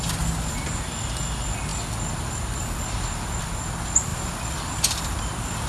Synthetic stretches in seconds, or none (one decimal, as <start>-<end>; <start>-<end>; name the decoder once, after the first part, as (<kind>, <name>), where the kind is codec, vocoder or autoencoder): none